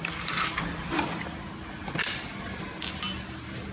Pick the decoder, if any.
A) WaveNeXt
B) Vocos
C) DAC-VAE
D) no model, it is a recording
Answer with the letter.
D